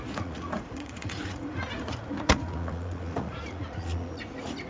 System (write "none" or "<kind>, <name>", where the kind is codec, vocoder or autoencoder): vocoder, Vocos